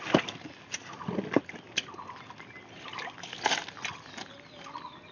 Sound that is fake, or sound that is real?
real